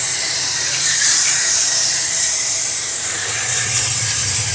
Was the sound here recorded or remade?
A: remade